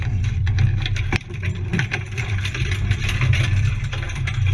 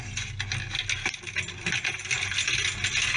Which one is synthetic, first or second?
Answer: first